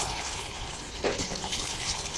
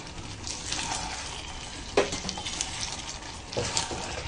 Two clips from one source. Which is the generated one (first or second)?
first